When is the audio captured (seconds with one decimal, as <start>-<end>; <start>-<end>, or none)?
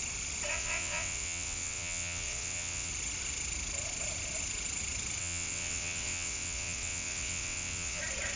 0.0-0.5; 2.9-5.2; 8.0-8.4